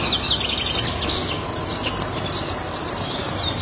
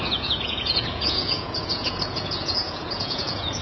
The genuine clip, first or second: first